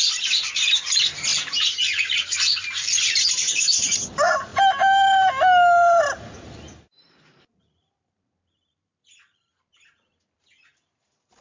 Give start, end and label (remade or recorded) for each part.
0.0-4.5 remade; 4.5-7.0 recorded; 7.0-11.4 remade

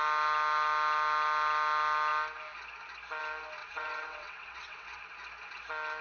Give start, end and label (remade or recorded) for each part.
0.0-3.6 recorded; 3.6-5.0 remade; 5.0-6.0 recorded

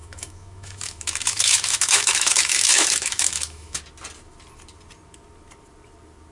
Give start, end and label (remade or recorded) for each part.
0.0-3.8 remade; 3.8-6.3 recorded

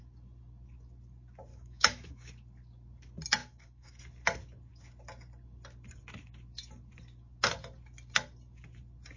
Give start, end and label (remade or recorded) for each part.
0.0-1.5 recorded; 1.5-2.3 remade; 2.3-3.4 recorded; 3.4-4.0 remade; 4.0-9.2 recorded

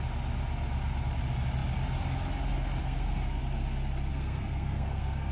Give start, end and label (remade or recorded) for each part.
0.0-2.8 recorded; 2.8-3.4 remade; 3.4-4.1 recorded; 4.1-5.3 remade

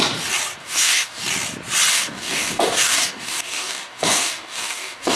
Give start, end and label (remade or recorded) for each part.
0.0-0.6 recorded; 0.6-1.2 remade; 1.2-1.9 recorded; 1.9-5.2 remade